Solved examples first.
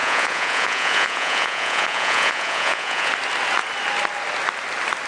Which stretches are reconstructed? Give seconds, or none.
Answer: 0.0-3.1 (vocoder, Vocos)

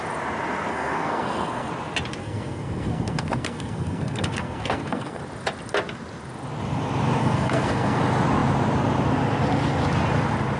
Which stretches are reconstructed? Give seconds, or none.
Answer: 0.7-1.7 (codec, SNAC); 2.2-5.2; 7.2-8.0

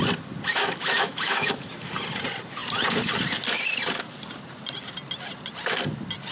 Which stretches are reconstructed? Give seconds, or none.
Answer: 0.5-1.9 (autoencoder, DAC-VAE)

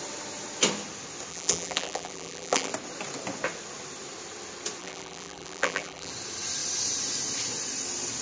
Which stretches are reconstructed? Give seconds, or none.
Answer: 1.3-2.7 (vocoder, BigVGAN v2); 4.8-6.1

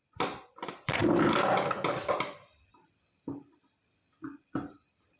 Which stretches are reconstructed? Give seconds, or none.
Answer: 0.0-1.0 (vocoder, BigVGAN v2); 4.1-5.2